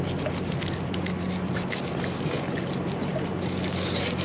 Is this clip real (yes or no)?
yes